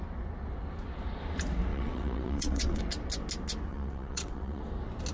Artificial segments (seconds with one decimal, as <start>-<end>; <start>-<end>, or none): 1.7-2.8; 3.7-4.6